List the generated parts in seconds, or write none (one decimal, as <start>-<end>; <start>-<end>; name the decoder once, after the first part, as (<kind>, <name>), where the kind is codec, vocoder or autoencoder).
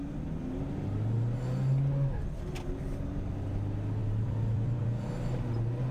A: 4.0-5.5 (vocoder, BigVGAN v2)